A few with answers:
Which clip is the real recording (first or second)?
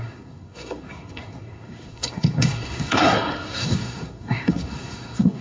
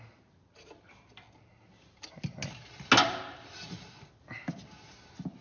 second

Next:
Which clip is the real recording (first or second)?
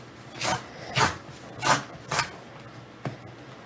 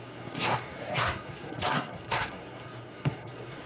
first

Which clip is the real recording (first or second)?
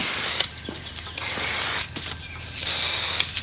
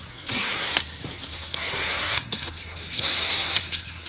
first